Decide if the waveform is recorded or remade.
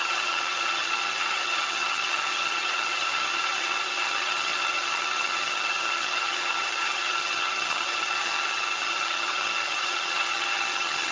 remade